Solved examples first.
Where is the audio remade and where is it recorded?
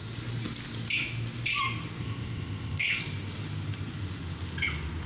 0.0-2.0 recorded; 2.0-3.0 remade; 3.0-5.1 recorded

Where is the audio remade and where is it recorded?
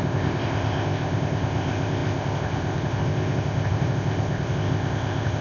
0.0-5.4 remade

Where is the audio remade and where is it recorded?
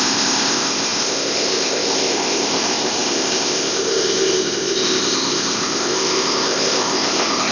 0.0-7.5 remade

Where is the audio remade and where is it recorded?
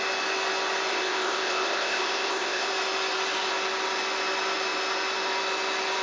0.0-0.9 recorded; 0.9-2.7 remade; 2.7-6.0 recorded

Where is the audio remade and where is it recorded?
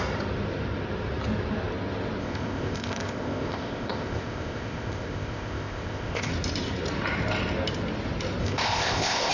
0.0-2.2 recorded; 2.2-6.3 remade; 6.3-8.4 recorded; 8.4-9.3 remade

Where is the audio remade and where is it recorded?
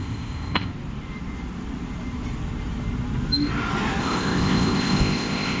0.0-0.7 remade; 0.7-4.0 recorded; 4.0-5.6 remade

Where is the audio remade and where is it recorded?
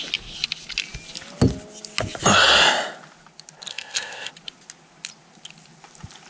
0.0-3.7 recorded; 3.7-4.3 remade; 4.3-6.3 recorded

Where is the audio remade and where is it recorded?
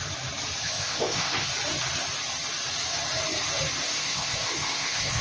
0.0-0.6 recorded; 0.6-1.5 remade; 1.5-3.8 recorded; 3.8-5.2 remade